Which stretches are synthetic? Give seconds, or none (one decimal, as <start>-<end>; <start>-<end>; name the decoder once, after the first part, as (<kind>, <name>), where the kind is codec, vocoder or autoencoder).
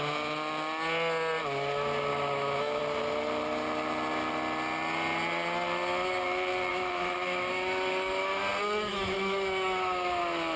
2.1-2.8 (autoencoder, DAC-VAE); 6.7-8.4; 8.9-10.2